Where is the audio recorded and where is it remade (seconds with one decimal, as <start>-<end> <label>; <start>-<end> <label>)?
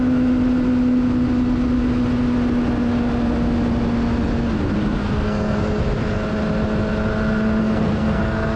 0.0-5.0 recorded; 5.0-5.8 remade; 5.8-7.6 recorded; 7.6-8.6 remade